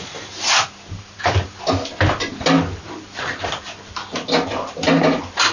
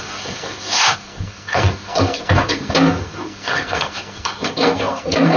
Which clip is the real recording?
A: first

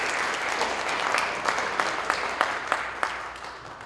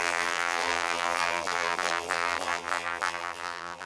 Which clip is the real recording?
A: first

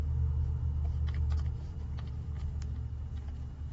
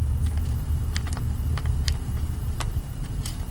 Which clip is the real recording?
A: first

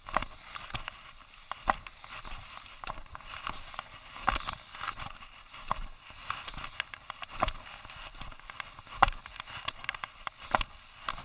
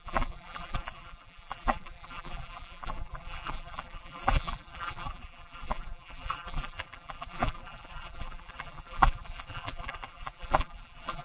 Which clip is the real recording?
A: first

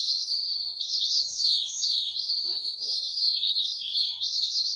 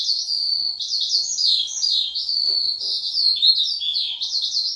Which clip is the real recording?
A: second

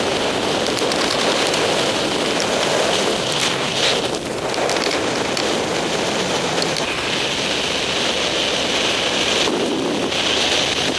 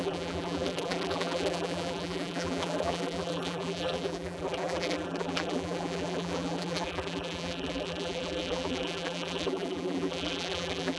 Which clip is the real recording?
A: first